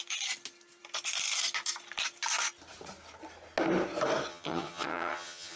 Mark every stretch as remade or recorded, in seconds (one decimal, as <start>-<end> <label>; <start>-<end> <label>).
0.0-4.3 recorded; 4.3-5.6 remade